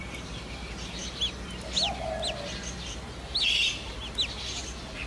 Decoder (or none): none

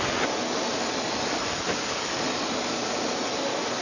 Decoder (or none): none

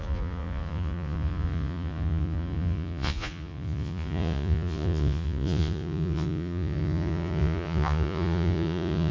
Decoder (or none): vocoder, Vocos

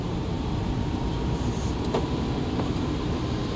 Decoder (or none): none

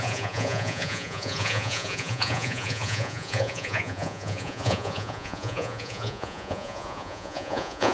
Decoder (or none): vocoder, Vocos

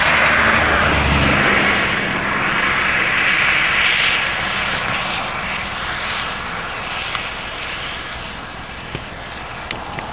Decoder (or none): none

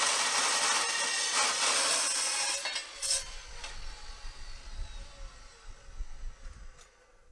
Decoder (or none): none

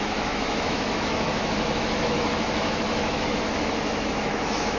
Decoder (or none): autoencoder, DAC-VAE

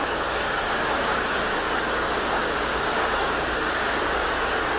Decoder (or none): codec, DAC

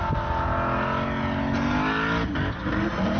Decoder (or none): none